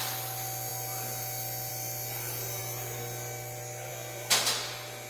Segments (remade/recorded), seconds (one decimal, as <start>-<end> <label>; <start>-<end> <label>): 0.0-5.1 recorded